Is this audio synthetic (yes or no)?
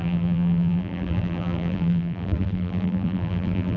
yes